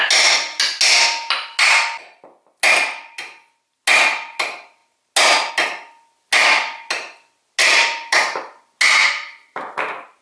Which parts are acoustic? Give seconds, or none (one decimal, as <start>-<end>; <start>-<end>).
0.0-10.2